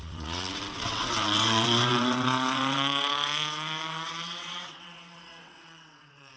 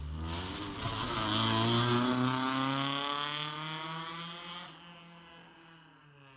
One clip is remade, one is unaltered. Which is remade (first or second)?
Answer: first